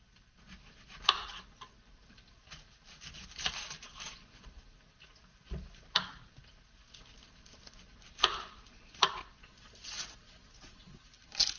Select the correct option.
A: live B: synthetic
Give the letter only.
A